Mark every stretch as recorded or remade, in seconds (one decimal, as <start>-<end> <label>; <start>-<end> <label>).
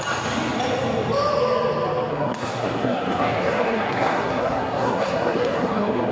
0.0-2.1 recorded; 2.1-6.1 remade